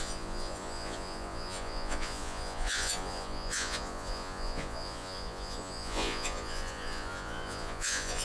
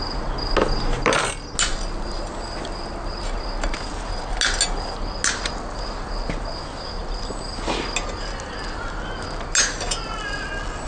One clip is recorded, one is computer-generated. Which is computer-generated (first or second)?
first